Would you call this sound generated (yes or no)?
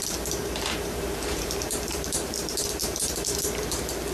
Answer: yes